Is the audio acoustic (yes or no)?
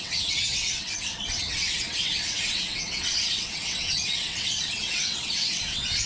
no